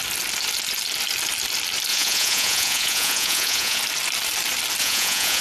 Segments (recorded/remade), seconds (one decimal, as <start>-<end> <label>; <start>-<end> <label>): 0.0-1.9 recorded; 1.9-3.8 remade; 3.8-4.8 recorded; 4.8-5.4 remade